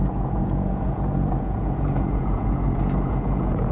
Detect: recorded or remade remade